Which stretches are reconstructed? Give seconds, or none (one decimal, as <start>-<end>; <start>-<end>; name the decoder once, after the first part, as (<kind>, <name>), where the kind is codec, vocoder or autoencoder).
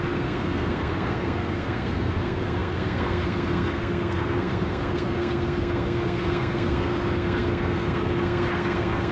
0.0-9.1 (codec, SNAC)